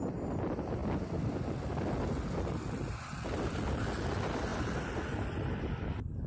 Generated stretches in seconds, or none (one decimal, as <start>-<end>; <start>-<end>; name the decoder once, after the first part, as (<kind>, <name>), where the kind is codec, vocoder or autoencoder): none